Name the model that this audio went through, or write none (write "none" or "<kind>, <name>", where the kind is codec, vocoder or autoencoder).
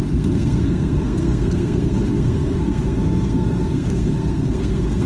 codec, SNAC